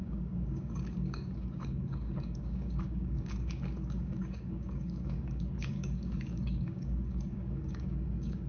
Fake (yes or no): yes